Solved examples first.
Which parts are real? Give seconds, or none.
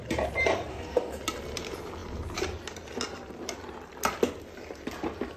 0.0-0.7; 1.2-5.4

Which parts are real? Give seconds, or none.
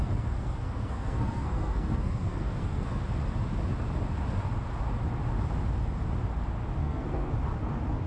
3.0-6.8; 7.3-8.1